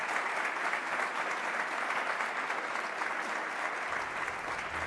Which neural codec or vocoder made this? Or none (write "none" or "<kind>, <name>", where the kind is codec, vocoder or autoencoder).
none